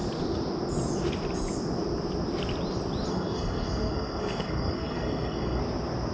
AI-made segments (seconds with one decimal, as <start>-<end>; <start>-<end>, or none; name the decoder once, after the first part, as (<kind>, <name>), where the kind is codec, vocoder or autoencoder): 3.1-5.6 (codec, SNAC)